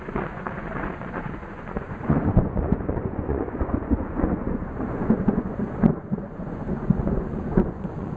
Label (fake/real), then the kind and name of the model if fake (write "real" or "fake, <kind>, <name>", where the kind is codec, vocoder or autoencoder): fake, vocoder, Vocos